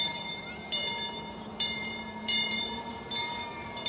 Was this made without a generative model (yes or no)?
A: no